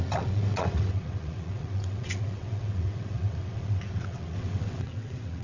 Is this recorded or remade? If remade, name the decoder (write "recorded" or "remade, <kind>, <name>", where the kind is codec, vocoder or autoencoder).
remade, vocoder, WaveNeXt